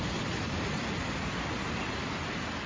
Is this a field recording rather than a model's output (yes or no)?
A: yes